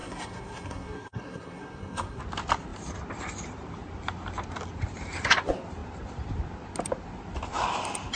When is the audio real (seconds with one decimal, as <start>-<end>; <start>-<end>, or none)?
2.2-8.2